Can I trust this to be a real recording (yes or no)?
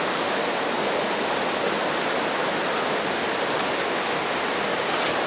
yes